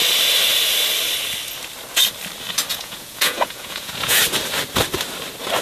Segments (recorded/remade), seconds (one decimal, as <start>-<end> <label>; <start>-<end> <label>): 0.0-2.7 recorded; 2.7-4.2 remade; 4.2-5.6 recorded